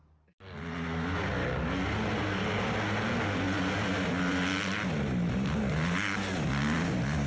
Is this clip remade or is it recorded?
recorded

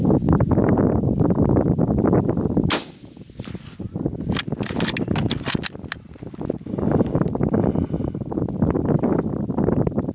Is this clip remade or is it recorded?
recorded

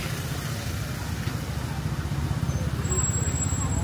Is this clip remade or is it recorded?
recorded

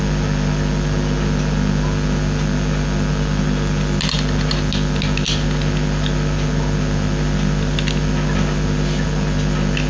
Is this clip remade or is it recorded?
recorded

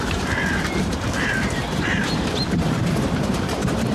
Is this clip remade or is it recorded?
remade